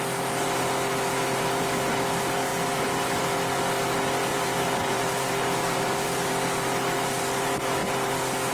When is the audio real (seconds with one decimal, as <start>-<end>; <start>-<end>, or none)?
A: 0.0-4.3; 6.3-8.5